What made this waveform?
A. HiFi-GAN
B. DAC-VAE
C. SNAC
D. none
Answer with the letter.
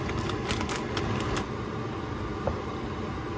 D